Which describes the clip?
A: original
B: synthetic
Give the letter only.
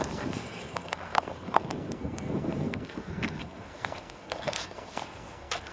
B